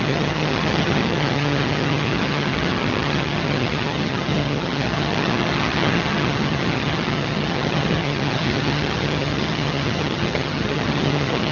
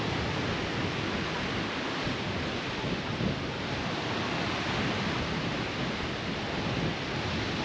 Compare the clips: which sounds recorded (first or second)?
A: second